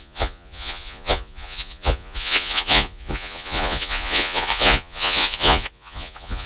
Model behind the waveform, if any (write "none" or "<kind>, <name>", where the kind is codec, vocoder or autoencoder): vocoder, Vocos